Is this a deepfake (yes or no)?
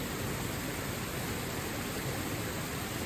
no